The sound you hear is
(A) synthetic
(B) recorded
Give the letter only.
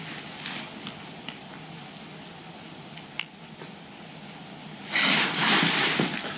B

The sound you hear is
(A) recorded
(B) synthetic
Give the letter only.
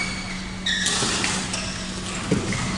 A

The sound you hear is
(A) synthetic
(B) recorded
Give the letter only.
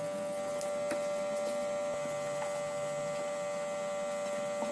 B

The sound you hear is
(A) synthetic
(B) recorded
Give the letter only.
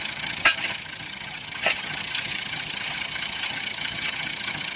A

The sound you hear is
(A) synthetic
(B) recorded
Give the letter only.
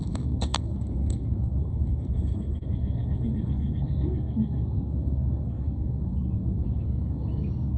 A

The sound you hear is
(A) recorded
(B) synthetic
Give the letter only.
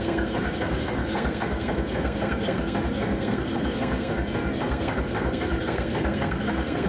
B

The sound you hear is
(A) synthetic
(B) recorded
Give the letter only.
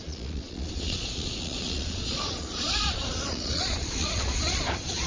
A